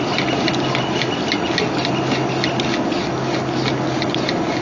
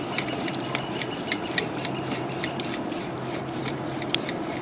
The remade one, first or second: second